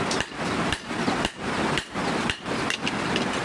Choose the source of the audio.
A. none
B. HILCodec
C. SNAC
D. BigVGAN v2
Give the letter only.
A